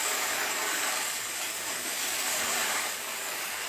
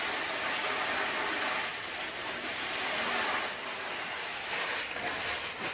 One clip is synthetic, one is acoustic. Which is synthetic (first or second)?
first